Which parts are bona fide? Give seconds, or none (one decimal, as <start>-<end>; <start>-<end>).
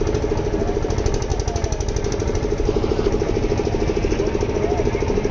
0.0-5.3